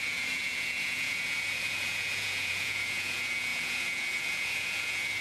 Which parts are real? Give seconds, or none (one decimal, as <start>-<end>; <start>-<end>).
none